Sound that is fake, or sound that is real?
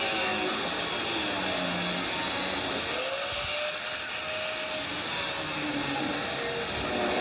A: real